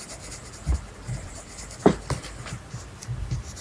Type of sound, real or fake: real